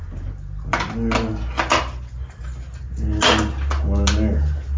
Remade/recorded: recorded